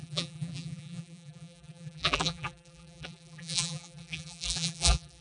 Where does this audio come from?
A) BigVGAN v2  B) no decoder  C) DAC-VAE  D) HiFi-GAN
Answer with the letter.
A